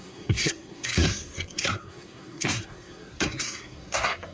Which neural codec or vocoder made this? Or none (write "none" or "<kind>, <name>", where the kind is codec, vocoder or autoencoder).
codec, SNAC